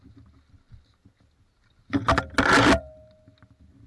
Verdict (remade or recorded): recorded